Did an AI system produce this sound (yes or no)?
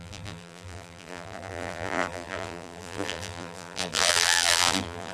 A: yes